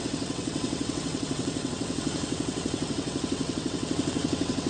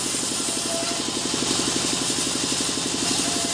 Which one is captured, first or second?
second